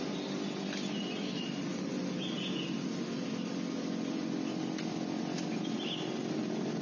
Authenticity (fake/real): real